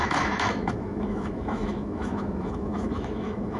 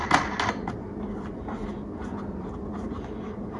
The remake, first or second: first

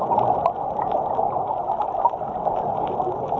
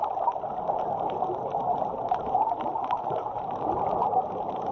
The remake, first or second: second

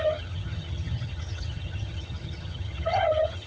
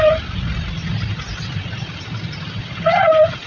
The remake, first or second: first